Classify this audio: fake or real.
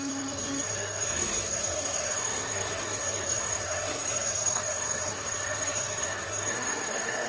fake